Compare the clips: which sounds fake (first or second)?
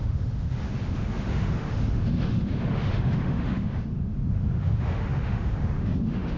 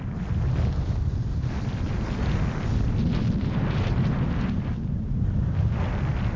first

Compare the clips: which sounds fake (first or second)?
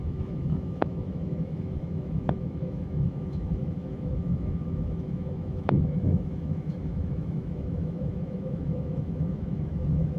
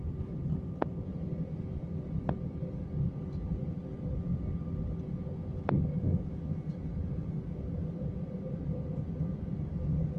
first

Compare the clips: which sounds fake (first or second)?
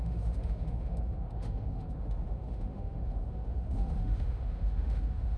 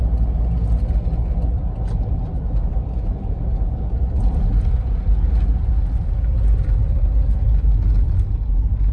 first